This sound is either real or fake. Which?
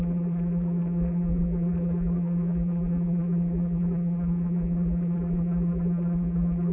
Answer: fake